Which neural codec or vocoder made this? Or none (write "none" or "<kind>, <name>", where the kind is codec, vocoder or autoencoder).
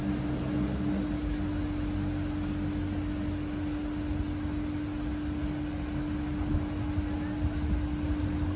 none